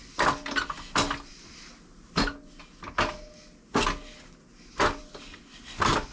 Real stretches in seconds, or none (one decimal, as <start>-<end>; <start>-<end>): 0.0-6.1